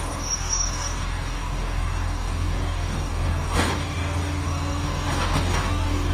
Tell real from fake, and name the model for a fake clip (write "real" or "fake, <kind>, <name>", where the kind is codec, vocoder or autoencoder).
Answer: fake, codec, DAC